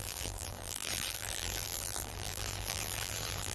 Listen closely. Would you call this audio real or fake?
fake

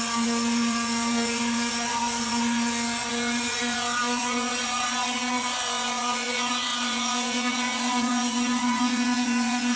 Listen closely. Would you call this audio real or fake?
fake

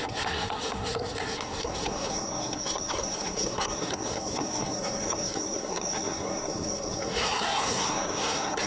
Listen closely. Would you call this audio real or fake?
fake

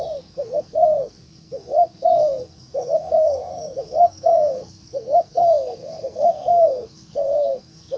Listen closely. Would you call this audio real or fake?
fake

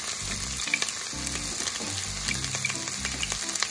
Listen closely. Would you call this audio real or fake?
real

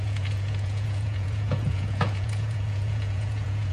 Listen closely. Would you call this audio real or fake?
fake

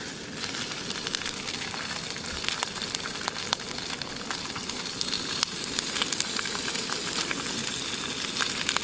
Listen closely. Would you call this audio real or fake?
real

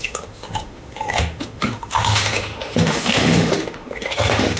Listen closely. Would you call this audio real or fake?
fake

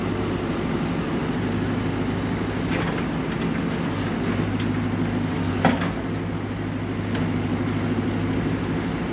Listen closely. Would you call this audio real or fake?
real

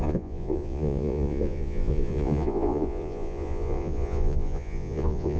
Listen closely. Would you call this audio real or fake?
fake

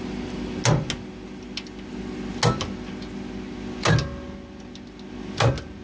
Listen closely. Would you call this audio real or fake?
real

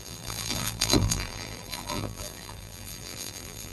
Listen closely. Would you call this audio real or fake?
fake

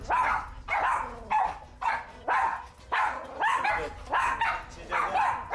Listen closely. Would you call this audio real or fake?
real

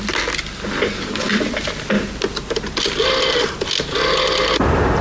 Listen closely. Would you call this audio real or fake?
real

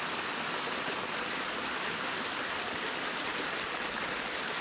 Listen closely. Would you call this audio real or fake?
real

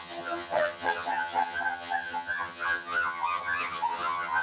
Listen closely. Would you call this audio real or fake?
fake